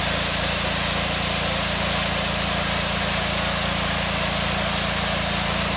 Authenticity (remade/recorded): recorded